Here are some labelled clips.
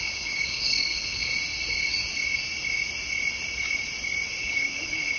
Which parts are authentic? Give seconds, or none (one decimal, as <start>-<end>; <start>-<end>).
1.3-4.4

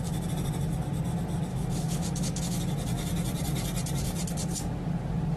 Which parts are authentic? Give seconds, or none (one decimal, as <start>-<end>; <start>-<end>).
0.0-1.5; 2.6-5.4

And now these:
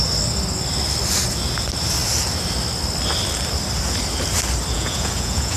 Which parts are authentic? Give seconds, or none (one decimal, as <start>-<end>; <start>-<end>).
0.0-4.7

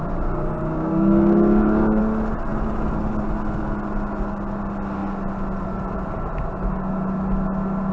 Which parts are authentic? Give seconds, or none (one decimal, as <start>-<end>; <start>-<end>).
0.0-0.6; 2.0-7.9

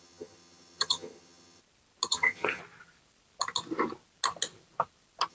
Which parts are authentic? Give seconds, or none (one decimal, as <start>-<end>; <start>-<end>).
1.6-2.1; 2.6-5.3